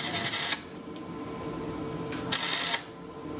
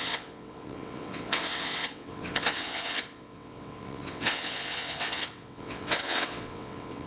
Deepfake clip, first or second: second